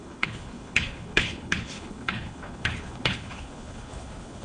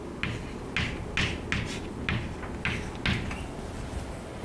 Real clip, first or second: second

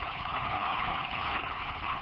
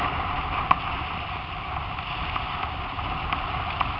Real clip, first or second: second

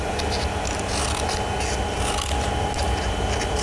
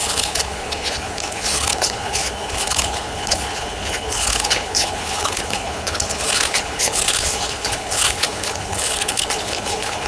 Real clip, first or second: first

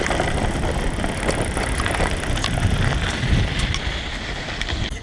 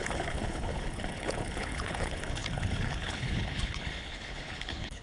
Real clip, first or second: first